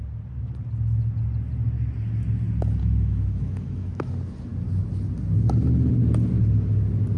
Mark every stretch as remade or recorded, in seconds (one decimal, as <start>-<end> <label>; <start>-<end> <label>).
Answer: 0.0-2.8 recorded; 2.8-4.1 remade; 4.1-7.2 recorded